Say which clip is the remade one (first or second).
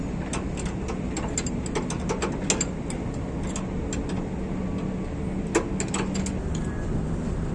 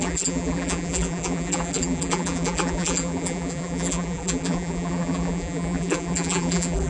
second